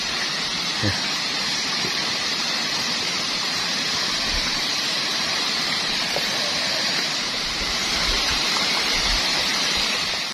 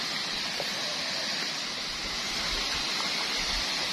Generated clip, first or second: first